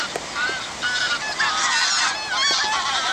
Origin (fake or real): real